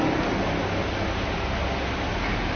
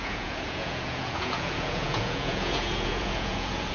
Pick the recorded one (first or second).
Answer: first